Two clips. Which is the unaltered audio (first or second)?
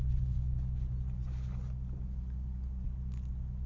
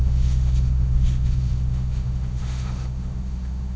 first